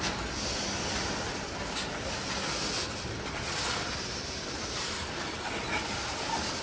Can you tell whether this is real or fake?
real